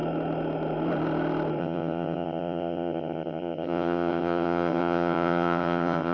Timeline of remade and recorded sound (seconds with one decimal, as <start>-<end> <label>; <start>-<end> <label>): 0.0-1.6 recorded; 1.6-6.1 remade